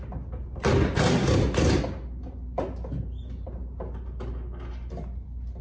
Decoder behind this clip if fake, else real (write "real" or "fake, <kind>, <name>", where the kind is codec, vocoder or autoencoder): real